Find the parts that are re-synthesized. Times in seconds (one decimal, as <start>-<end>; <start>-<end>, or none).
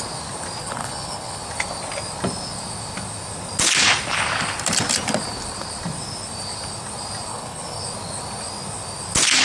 0.6-1.4; 7.3-7.8